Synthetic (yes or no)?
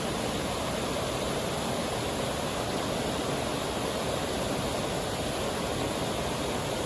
no